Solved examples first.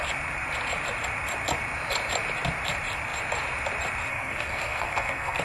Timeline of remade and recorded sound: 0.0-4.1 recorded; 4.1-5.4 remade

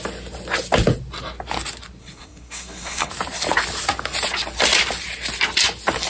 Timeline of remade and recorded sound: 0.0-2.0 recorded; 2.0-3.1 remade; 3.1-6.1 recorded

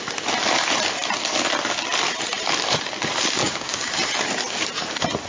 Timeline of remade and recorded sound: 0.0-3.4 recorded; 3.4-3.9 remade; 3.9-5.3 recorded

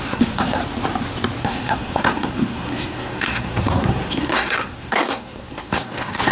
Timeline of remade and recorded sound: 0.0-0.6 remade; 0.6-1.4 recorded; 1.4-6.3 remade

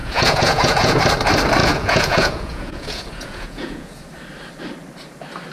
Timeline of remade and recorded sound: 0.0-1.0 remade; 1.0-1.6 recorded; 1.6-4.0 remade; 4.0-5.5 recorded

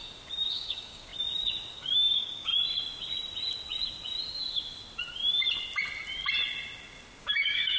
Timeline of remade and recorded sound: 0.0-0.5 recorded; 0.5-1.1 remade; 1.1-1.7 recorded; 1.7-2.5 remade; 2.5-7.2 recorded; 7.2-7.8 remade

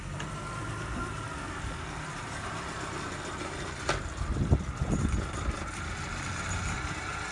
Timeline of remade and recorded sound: 0.0-7.3 recorded

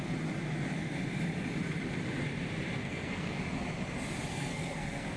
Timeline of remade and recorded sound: 0.0-2.8 recorded; 2.8-3.4 remade; 3.4-4.3 recorded; 4.3-5.2 remade